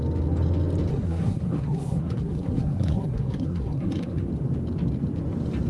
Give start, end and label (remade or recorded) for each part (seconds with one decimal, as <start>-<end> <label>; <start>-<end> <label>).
0.0-0.9 recorded; 0.9-4.3 remade; 4.3-5.7 recorded